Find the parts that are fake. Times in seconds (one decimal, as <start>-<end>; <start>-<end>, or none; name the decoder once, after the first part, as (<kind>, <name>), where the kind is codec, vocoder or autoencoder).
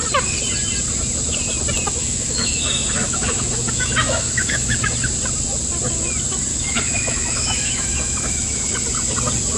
2.0-4.8 (autoencoder, DAC-VAE); 6.5-8.7